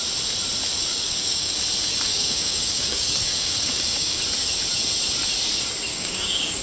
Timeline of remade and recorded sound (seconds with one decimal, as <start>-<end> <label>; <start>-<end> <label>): 0.0-0.9 recorded; 0.9-1.6 remade; 1.6-2.1 recorded; 2.1-4.2 remade; 4.2-5.9 recorded; 5.9-6.6 remade